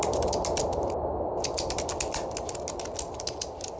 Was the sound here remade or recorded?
recorded